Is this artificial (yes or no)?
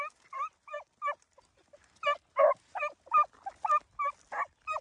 no